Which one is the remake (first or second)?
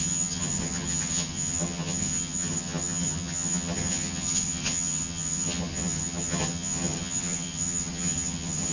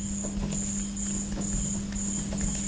first